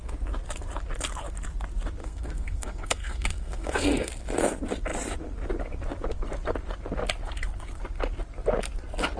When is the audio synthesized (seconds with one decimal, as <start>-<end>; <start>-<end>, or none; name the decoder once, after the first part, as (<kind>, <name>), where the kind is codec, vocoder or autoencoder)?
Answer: 2.0-4.1 (codec, SNAC)